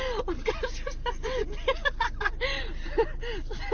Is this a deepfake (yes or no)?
no